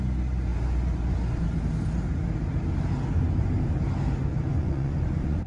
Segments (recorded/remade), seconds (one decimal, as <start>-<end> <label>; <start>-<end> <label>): 0.0-4.3 recorded; 4.3-5.5 remade

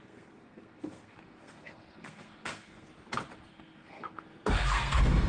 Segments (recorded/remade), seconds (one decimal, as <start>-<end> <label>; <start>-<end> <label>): 0.0-2.9 remade; 2.9-3.5 recorded; 3.5-5.3 remade